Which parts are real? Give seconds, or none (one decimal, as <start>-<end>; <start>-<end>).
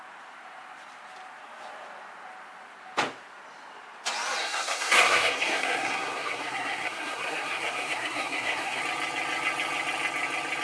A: 0.0-4.4; 8.8-10.6